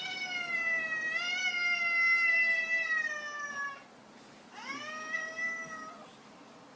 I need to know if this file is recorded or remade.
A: recorded